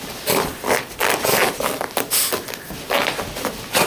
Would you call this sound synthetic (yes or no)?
no